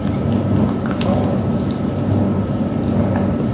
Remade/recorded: recorded